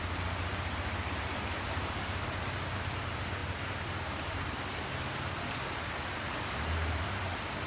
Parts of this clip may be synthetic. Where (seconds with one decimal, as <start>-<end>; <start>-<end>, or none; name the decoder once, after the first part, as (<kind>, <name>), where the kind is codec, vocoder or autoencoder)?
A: none